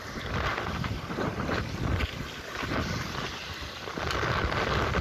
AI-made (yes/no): no